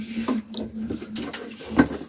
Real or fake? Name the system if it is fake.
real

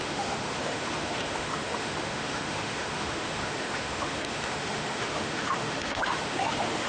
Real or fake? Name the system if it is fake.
fake, autoencoder, DAC-VAE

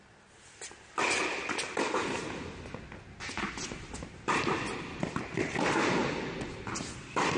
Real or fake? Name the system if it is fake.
real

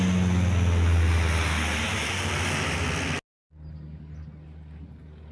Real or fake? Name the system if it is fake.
real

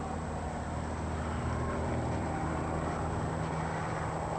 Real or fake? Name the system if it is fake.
real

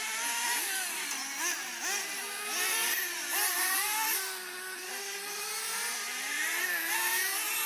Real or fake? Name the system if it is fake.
real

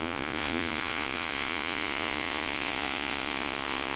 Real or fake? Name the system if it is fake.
fake, vocoder, Vocos